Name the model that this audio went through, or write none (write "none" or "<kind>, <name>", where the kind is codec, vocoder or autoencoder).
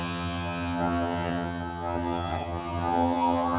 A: vocoder, HiFi-GAN